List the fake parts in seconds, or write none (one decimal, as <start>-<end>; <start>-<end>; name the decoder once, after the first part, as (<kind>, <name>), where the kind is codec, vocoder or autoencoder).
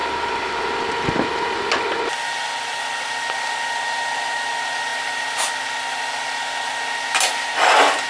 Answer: 0.0-2.0 (vocoder, BigVGAN v2); 4.9-6.7